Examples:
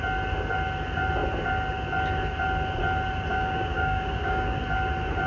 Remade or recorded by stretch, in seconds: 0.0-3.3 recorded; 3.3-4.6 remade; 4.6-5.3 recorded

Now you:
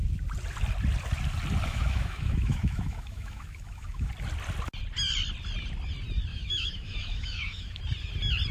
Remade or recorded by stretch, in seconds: 0.0-1.7 recorded; 1.7-4.1 remade; 4.1-6.3 recorded; 6.3-7.8 remade; 7.8-8.5 recorded

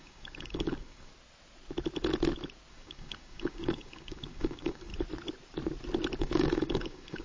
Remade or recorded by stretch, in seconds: 0.0-1.1 remade; 1.1-2.7 recorded; 2.7-4.9 remade; 4.9-6.2 recorded; 6.2-7.2 remade

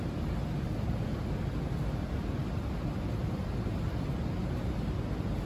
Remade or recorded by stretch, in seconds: 0.0-1.1 remade; 1.1-4.4 recorded; 4.4-5.5 remade

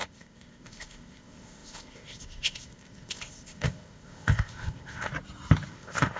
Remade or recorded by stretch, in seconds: 0.0-5.1 remade; 5.1-5.7 recorded; 5.7-6.2 remade

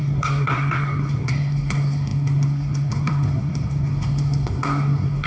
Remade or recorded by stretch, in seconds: 0.0-5.3 remade